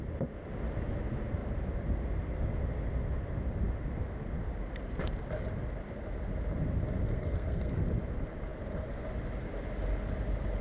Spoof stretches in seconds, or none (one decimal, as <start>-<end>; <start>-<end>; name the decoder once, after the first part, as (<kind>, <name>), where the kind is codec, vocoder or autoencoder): 7.1-7.8 (codec, SNAC)